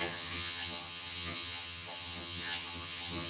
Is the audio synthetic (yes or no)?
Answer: yes